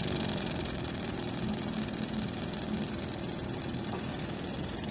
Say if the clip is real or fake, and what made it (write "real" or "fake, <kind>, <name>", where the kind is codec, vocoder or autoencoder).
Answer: real